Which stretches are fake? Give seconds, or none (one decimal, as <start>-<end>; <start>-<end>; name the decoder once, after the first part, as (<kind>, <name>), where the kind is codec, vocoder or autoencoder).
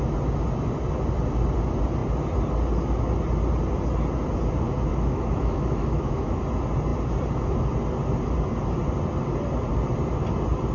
4.9-6.4 (autoencoder, DAC-VAE)